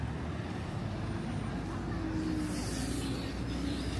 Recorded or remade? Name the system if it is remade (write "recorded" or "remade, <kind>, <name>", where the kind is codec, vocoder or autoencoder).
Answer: recorded